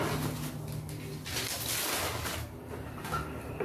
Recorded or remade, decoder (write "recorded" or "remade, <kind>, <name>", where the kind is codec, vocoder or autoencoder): recorded